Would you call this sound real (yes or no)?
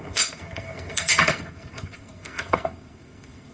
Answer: no